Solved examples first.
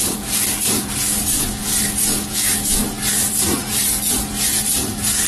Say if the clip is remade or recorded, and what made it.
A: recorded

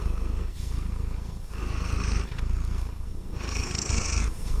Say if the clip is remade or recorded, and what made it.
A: remade, codec, SNAC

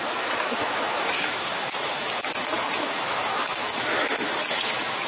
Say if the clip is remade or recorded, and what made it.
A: remade, autoencoder, DAC-VAE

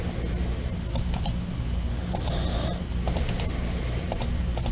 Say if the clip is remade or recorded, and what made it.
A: recorded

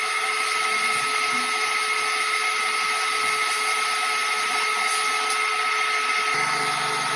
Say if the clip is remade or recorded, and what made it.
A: recorded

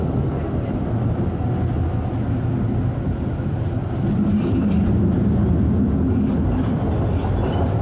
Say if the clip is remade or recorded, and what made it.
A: recorded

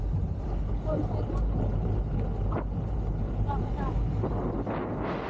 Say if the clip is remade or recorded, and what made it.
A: recorded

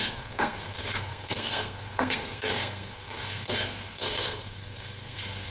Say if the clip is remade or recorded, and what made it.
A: remade, codec, SNAC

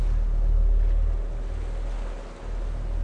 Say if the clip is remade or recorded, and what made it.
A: recorded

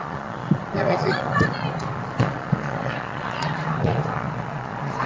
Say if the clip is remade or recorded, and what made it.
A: remade, vocoder, Vocos